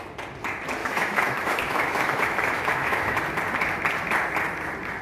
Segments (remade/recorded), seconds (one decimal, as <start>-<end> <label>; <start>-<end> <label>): 0.0-0.8 recorded; 0.8-3.2 remade; 3.2-5.0 recorded